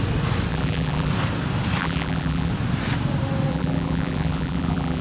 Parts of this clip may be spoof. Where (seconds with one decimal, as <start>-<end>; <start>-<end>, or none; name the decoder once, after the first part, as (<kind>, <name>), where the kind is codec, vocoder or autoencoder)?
0.5-1.1 (vocoder, BigVGAN v2); 1.8-2.5; 3.5-5.0

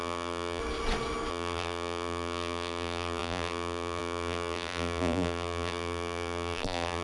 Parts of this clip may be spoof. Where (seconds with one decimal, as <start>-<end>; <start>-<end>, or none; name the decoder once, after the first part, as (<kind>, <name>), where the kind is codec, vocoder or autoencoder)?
0.0-0.6 (vocoder, BigVGAN v2); 1.3-7.0

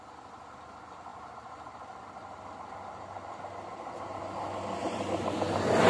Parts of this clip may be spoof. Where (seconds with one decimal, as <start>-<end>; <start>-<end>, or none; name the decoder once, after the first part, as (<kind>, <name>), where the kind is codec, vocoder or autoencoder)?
none

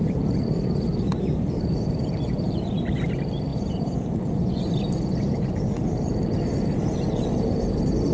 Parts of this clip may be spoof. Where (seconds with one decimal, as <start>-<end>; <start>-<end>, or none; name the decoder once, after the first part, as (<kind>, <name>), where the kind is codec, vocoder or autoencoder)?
0.0-8.1 (vocoder, BigVGAN v2)

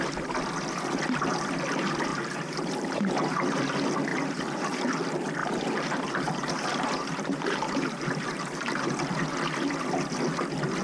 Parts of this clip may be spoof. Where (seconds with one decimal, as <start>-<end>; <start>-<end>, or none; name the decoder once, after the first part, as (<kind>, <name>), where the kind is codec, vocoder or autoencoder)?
2.1-3.6 (vocoder, BigVGAN v2); 4.1-4.8; 5.4-8.4

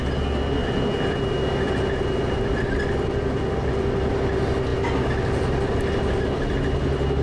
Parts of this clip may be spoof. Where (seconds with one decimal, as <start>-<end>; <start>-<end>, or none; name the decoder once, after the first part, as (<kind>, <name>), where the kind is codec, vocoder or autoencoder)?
none

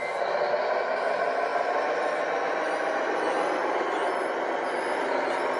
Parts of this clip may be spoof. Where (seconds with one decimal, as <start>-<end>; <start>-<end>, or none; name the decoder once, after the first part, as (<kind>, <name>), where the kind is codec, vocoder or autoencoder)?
1.5-2.5 (vocoder, BigVGAN v2); 3.6-5.6